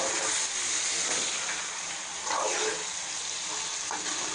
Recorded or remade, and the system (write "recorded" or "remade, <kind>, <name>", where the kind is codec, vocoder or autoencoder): recorded